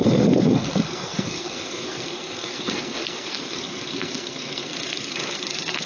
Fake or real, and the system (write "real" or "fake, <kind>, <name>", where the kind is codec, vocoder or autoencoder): fake, codec, SNAC